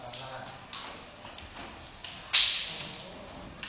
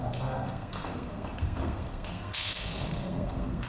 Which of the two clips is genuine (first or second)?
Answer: first